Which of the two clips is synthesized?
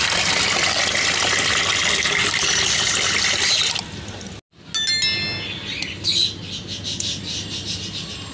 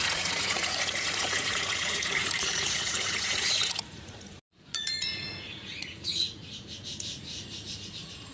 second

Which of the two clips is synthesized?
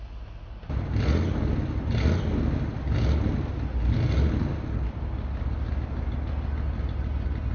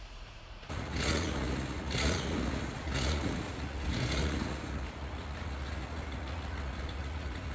second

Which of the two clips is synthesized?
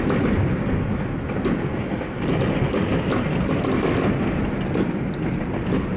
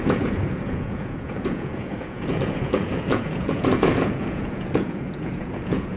second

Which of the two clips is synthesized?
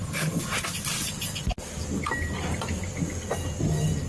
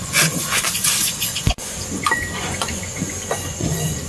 second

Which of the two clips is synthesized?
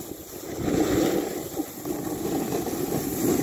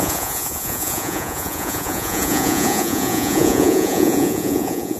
second